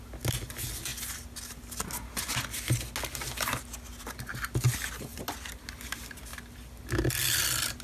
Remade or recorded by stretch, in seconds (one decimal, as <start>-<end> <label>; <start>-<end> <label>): 0.0-5.1 recorded; 5.1-5.6 remade; 5.6-7.8 recorded